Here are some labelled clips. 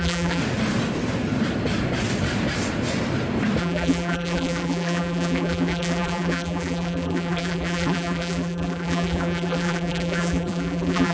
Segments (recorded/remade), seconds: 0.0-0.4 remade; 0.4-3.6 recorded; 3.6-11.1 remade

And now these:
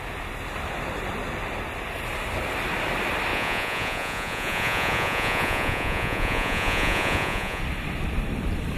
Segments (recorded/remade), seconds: 0.0-3.3 recorded; 3.3-7.6 remade; 7.6-8.8 recorded

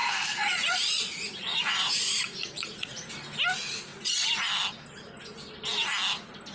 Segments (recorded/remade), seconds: 0.0-3.1 remade; 3.1-6.5 recorded

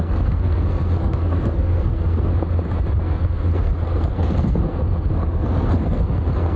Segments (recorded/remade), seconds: 0.0-2.3 remade; 2.3-3.0 recorded; 3.0-6.6 remade

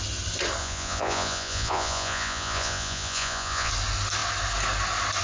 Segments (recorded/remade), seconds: 0.0-0.6 recorded; 0.6-3.7 remade; 3.7-5.2 recorded

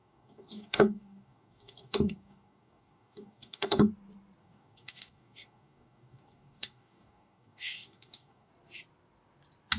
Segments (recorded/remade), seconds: 0.0-3.9 remade; 3.9-4.4 recorded; 4.4-8.5 remade; 8.5-9.8 recorded

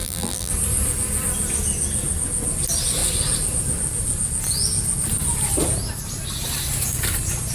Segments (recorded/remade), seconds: 0.0-0.5 remade; 0.5-7.5 recorded

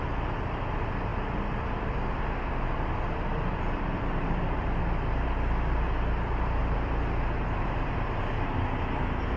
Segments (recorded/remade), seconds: 0.0-1.1 recorded; 1.1-4.8 remade; 4.8-6.6 recorded; 6.6-8.2 remade; 8.2-9.4 recorded